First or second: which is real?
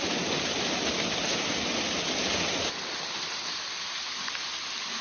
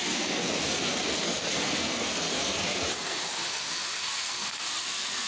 first